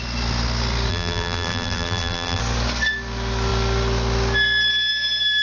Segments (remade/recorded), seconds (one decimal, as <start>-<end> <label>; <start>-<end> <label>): 0.0-0.9 recorded; 0.9-2.4 remade; 2.4-5.4 recorded